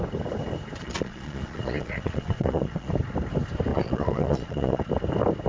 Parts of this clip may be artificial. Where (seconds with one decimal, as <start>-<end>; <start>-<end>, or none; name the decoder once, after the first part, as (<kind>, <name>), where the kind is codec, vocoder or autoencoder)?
0.8-2.9 (vocoder, Vocos); 3.7-4.9